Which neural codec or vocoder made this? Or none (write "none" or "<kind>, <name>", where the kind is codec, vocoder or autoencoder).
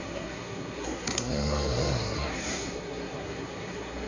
codec, SNAC